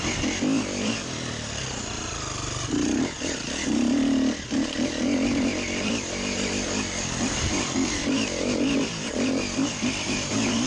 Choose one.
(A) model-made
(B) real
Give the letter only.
A